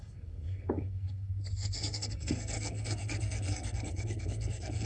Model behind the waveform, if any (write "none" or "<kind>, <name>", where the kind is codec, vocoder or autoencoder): codec, SNAC